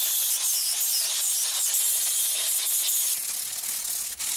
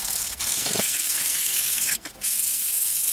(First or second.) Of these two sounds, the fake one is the second